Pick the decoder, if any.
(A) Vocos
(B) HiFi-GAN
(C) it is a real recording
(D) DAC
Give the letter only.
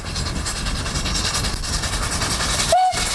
C